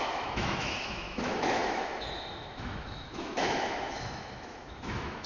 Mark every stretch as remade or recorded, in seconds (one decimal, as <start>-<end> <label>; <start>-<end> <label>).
0.0-5.3 remade